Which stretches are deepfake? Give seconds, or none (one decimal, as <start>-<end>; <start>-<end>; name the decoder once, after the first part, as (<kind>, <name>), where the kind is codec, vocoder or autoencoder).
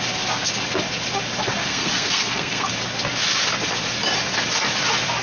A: 1.6-2.7 (codec, SNAC)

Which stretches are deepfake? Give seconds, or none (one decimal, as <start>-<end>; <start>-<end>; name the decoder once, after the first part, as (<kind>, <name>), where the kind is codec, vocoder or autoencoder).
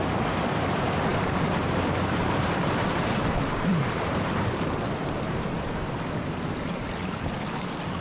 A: 1.1-5.9 (vocoder, BigVGAN v2)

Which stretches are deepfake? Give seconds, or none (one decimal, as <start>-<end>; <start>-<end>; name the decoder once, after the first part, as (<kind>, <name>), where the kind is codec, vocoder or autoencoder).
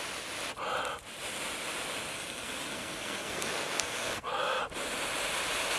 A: 2.1-4.6 (codec, SNAC)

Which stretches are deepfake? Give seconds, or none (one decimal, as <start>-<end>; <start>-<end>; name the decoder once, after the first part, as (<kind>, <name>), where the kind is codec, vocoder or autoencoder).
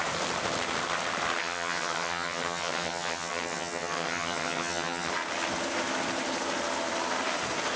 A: 1.4-5.1 (vocoder, HiFi-GAN)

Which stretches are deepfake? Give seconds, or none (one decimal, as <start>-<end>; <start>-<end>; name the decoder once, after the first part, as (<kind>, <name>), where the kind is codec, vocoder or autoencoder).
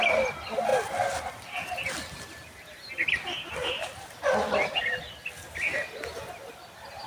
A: none